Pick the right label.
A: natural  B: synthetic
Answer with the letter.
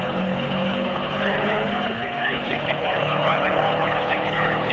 B